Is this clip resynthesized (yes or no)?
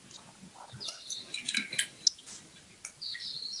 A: no